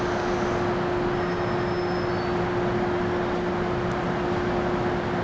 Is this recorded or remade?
recorded